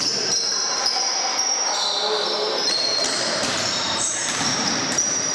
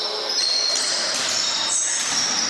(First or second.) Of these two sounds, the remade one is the first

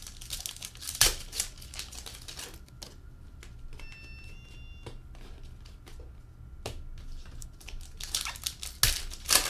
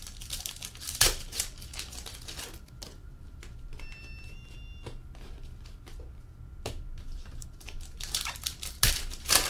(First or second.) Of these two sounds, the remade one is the second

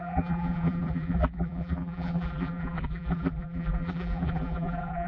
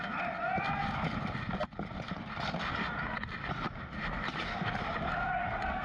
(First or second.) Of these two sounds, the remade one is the first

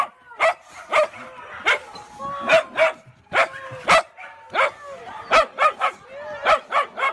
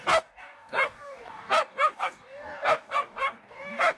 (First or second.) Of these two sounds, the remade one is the second